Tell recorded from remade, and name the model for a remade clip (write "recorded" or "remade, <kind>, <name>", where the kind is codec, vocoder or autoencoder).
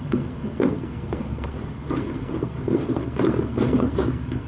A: remade, codec, SNAC